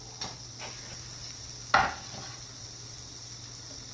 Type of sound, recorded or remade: recorded